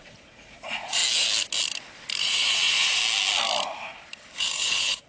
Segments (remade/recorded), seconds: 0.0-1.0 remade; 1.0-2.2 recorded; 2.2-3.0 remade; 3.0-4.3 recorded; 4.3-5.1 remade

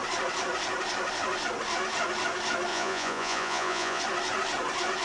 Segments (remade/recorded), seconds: 0.0-2.7 recorded; 2.7-4.0 remade; 4.0-5.0 recorded

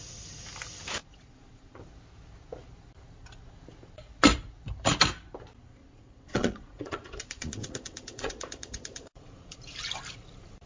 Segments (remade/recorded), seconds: 0.0-1.0 recorded; 1.0-1.8 remade; 1.8-5.8 recorded; 5.8-9.6 remade; 9.6-10.7 recorded

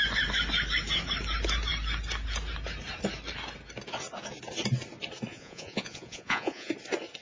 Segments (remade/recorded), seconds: 0.0-5.3 recorded; 5.3-6.7 remade; 6.7-7.2 recorded